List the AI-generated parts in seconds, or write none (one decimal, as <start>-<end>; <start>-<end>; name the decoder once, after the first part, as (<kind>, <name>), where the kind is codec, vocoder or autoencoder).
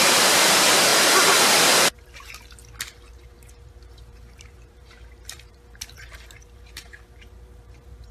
0.0-0.9 (vocoder, BigVGAN v2); 1.6-2.6; 3.1-8.1